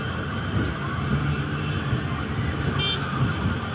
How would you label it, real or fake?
real